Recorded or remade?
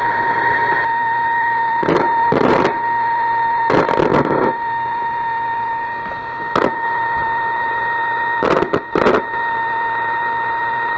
remade